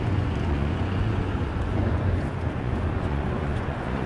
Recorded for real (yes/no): no